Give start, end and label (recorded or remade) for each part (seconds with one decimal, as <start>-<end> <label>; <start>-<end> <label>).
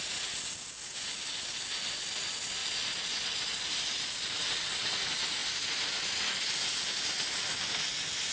0.0-2.6 recorded; 2.6-4.5 remade; 4.5-8.3 recorded